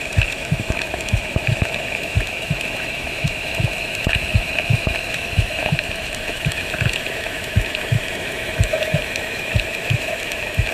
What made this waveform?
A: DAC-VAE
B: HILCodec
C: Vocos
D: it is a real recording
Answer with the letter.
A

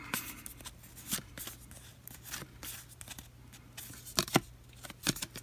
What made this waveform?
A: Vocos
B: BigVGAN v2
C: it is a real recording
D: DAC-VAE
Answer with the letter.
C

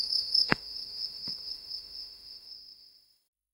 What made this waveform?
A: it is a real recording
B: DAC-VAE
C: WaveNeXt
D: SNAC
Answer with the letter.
B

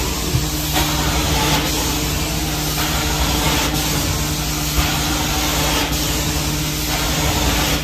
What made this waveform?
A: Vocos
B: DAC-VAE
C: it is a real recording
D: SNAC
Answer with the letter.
C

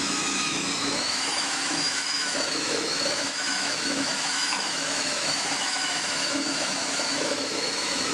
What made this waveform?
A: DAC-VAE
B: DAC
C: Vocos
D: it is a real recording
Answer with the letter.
A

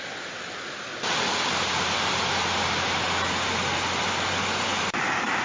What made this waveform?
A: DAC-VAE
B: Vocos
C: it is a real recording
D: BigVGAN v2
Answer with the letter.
C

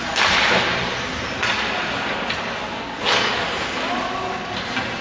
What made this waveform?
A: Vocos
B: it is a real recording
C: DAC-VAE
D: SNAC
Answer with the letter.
B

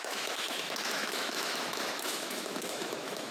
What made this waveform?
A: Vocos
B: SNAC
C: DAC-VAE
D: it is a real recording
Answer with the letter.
C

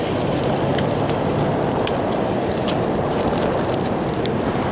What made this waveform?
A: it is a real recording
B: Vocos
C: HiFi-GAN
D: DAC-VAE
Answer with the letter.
A